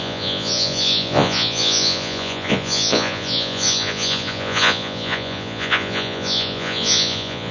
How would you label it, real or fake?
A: fake